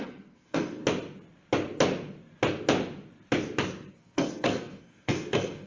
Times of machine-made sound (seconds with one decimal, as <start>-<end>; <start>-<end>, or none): 0.0-0.8; 3.9-5.7